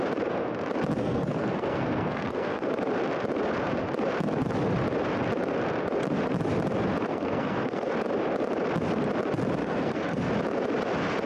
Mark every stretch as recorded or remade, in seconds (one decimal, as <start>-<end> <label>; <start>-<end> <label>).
0.0-1.0 recorded; 1.0-2.7 remade; 2.7-7.1 recorded; 7.1-7.9 remade; 7.9-9.6 recorded; 9.6-10.3 remade; 10.3-11.3 recorded